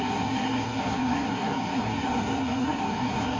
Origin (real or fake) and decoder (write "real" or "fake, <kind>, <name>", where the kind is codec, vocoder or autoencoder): fake, codec, SNAC